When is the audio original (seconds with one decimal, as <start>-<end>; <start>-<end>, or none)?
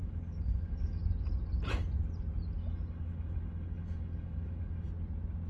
1.0-2.6; 4.9-5.5